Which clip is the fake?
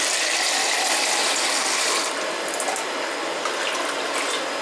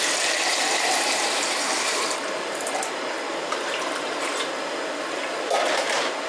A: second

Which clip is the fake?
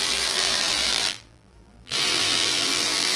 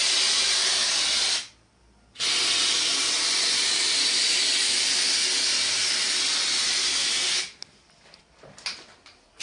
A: first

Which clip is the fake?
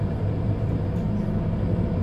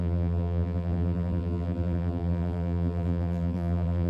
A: second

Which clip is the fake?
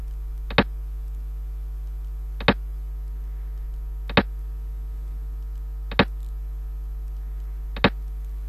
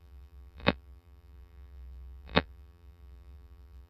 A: second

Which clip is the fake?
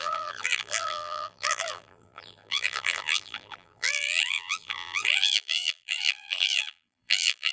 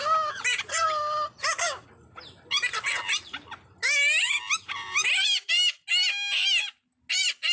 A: first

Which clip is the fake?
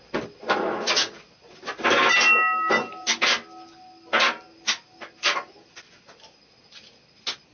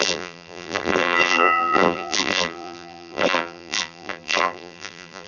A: second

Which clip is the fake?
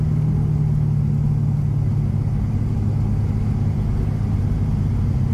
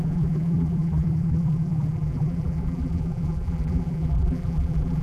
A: second